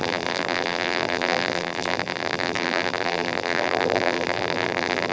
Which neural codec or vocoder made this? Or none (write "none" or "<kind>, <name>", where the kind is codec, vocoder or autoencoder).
vocoder, BigVGAN v2